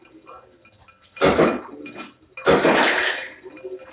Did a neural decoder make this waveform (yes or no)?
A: no